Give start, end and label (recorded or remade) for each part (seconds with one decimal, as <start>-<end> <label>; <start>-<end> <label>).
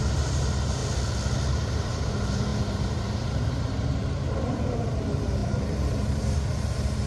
0.0-0.8 remade; 0.8-1.5 recorded; 1.5-7.1 remade